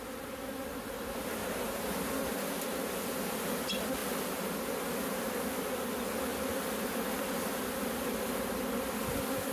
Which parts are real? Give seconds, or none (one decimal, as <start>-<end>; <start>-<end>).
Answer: 0.0-9.5